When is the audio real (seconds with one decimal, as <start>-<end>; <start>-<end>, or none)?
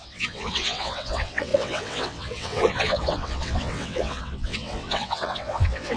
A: none